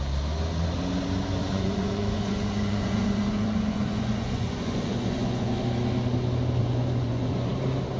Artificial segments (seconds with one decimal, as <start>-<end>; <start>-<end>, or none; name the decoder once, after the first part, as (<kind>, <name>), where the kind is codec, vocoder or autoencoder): 1.4-5.6 (vocoder, Vocos); 6.6-7.5